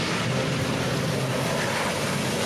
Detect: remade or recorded recorded